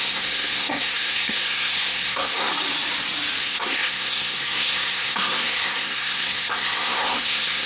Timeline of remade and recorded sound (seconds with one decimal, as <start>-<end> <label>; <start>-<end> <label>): 0.0-2.5 remade; 2.5-3.4 recorded; 3.4-7.7 remade